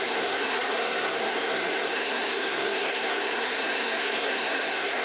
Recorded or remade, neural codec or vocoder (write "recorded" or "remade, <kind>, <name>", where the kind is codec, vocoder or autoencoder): remade, codec, SNAC